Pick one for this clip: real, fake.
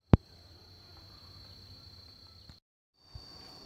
real